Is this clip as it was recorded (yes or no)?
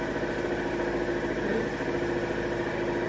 yes